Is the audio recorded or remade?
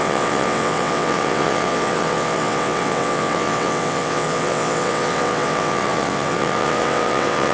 remade